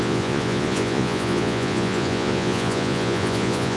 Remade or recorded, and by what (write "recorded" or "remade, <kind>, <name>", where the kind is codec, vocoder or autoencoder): remade, vocoder, Vocos